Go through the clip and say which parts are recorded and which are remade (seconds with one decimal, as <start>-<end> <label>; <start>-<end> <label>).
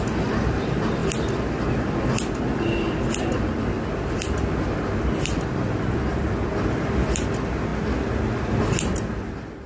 0.0-9.7 recorded